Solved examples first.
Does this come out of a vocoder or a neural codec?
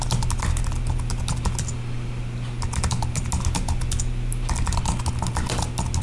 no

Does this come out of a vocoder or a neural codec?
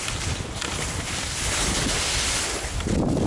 no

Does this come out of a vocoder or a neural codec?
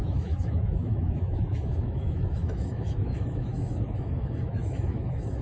yes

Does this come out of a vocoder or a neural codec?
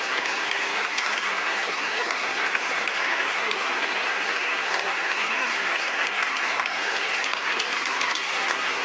yes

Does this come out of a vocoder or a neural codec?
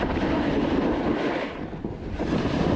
no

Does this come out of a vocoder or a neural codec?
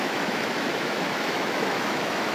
yes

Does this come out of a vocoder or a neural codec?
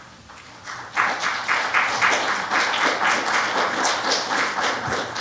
no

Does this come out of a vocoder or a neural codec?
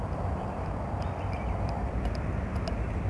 yes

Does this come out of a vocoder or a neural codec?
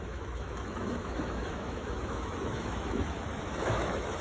yes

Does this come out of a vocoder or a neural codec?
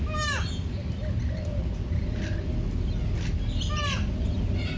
no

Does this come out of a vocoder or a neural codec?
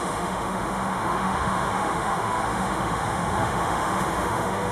yes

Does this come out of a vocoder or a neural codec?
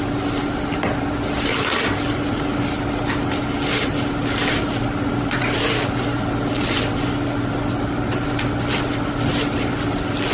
no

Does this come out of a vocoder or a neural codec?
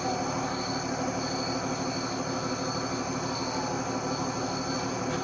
no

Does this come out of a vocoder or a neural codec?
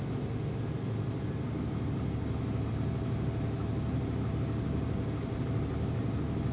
no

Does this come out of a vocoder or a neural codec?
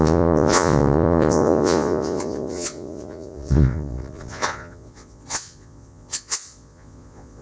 yes